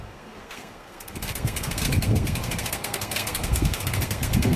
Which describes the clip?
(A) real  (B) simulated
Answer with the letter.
B